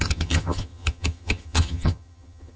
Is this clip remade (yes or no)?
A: yes